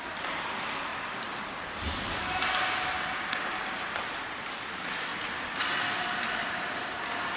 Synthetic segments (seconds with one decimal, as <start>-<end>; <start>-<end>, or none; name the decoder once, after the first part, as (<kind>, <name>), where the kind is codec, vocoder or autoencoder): 0.0-0.9 (vocoder, BigVGAN v2); 3.2-5.1; 5.6-7.4